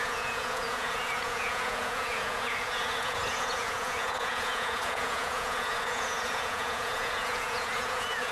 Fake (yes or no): yes